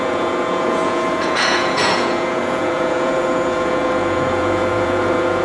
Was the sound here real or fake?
fake